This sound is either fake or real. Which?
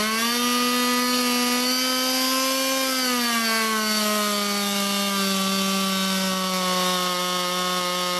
real